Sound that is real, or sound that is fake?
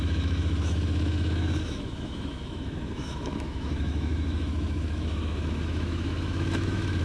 fake